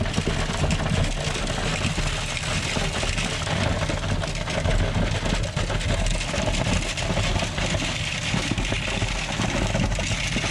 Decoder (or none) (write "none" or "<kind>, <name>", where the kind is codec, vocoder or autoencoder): none